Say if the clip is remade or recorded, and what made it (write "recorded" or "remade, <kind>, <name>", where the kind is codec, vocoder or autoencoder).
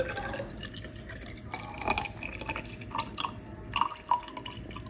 recorded